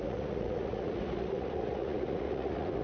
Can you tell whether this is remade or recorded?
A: remade